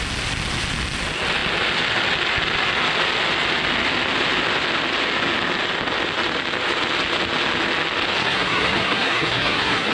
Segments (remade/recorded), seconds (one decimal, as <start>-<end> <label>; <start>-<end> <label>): 0.0-8.2 recorded; 8.2-9.9 remade